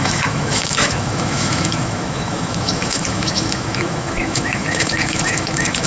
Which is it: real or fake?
fake